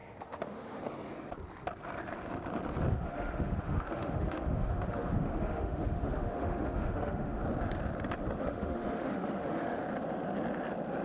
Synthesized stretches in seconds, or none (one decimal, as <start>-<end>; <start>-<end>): 0.0-0.8; 2.9-7.4; 8.4-9.8